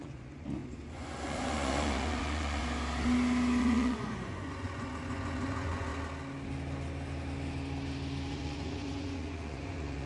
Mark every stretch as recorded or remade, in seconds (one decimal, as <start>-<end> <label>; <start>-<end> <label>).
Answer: 0.0-2.6 remade; 2.6-3.6 recorded; 3.6-5.9 remade; 5.9-8.3 recorded; 8.3-10.1 remade